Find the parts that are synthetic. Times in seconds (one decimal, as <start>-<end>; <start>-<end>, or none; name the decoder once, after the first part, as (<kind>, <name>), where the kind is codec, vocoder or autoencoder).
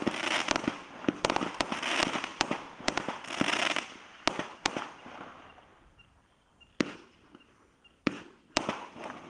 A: none